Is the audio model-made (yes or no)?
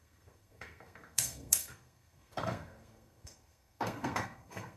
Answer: yes